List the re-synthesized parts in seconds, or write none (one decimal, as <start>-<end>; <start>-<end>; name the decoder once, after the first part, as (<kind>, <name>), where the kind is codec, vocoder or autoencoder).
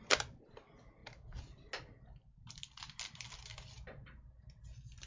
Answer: none